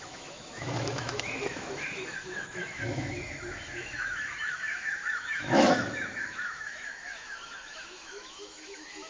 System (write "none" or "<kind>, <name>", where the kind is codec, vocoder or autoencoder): autoencoder, DAC-VAE